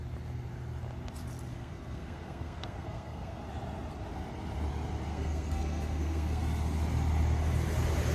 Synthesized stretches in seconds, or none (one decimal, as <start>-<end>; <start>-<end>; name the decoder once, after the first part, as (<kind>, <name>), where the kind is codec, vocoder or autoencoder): 1.5-3.4 (codec, SNAC); 5.1-6.4